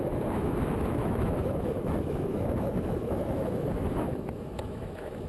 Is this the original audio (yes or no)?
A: no